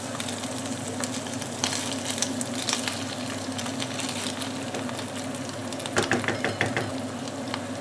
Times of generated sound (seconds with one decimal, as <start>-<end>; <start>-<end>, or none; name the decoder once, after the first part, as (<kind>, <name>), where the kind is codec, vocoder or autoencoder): none